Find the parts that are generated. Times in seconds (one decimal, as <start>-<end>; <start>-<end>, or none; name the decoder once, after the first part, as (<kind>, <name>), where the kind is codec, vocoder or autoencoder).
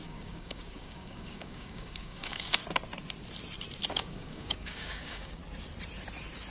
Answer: 0.0-2.6 (codec, DAC); 3.9-5.4